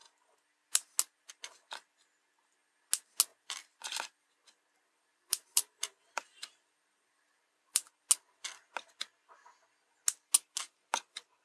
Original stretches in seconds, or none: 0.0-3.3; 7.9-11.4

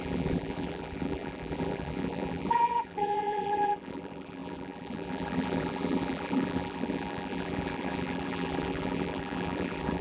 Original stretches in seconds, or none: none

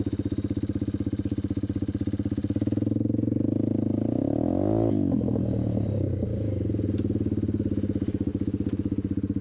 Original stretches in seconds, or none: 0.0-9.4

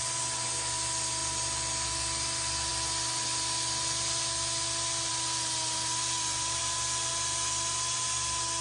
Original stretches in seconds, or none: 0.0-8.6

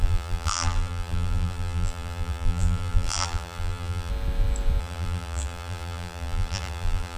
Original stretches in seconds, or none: 4.1-4.8

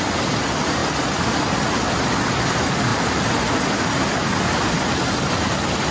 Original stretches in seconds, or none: 0.0-2.9; 3.7-5.9